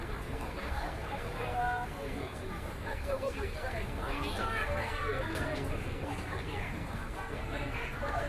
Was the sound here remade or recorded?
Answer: remade